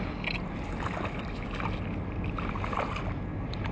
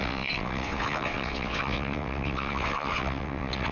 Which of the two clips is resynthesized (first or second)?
second